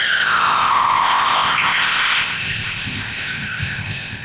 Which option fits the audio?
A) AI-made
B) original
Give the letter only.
A